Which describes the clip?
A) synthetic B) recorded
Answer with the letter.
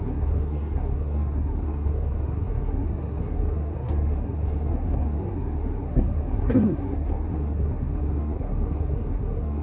A